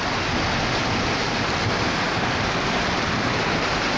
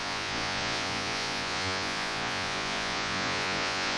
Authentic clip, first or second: first